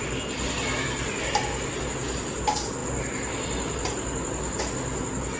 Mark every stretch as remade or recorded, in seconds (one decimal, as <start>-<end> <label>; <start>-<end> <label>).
0.0-5.4 recorded